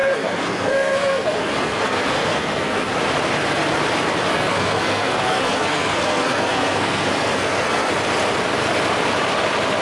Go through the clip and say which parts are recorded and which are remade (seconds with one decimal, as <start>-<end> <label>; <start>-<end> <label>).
0.0-2.9 remade; 2.9-4.3 recorded; 4.3-7.9 remade; 7.9-9.8 recorded